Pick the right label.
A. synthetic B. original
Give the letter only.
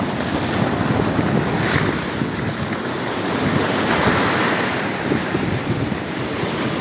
B